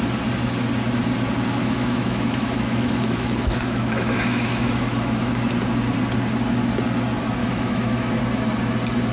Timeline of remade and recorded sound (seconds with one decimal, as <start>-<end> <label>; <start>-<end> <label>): 0.0-1.6 recorded; 1.6-5.5 remade; 5.5-7.4 recorded; 7.4-8.2 remade; 8.2-9.1 recorded